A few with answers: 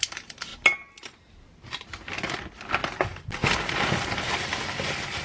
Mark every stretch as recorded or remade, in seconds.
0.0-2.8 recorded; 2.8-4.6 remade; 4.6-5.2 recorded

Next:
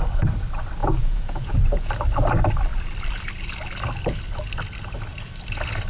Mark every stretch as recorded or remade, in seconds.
0.0-0.8 recorded; 0.8-1.9 remade; 1.9-5.9 recorded